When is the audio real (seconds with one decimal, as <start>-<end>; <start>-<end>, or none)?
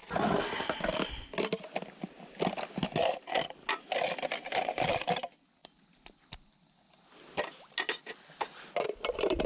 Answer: 0.0-9.5